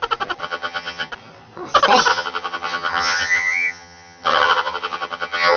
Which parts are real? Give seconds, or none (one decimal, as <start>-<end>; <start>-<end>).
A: 0.0-0.4; 1.1-2.1